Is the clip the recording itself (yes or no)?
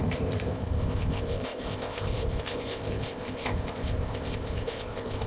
no